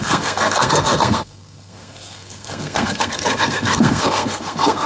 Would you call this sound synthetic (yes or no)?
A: yes